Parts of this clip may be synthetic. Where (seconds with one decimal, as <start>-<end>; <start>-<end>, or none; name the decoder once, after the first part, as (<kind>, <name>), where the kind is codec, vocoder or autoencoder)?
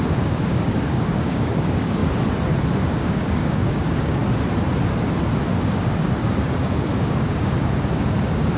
0.0-2.0 (codec, DAC); 2.7-4.2; 5.6-8.6